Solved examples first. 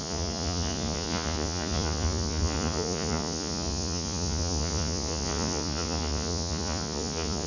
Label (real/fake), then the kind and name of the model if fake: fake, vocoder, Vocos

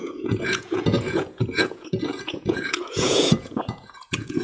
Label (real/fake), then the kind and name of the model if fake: fake, vocoder, Vocos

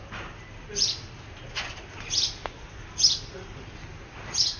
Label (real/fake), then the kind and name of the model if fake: real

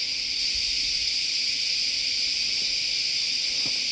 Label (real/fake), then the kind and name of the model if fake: real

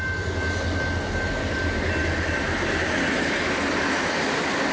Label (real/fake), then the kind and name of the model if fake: real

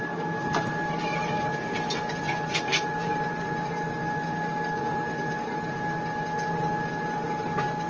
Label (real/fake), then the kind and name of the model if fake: real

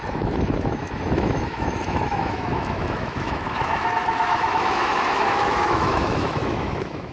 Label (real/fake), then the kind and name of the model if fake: fake, autoencoder, DAC-VAE